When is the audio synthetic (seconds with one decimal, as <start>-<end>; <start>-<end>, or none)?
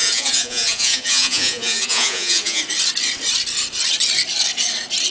0.0-2.6